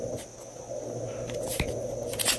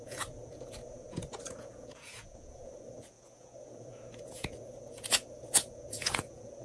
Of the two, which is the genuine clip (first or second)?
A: first